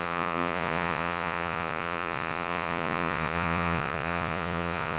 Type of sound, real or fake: fake